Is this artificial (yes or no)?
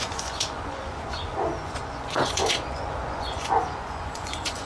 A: yes